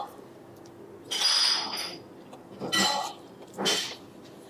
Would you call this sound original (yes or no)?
yes